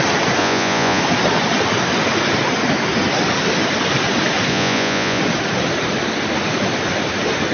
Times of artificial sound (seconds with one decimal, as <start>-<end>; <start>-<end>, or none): 0.4-1.0; 4.5-5.2